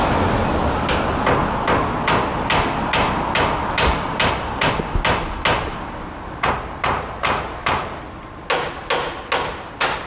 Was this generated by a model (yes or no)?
no